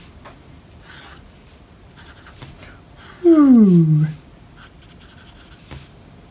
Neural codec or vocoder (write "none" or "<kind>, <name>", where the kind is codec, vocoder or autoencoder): none